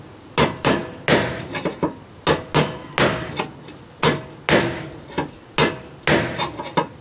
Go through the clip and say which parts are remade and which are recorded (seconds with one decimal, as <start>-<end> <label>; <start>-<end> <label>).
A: 0.0-7.0 recorded